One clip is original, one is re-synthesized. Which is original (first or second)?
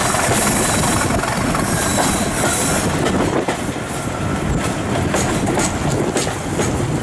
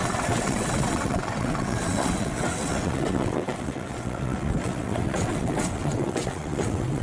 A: first